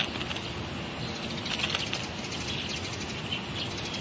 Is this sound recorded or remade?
recorded